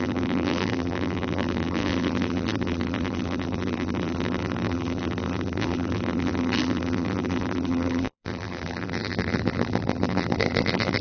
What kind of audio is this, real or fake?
fake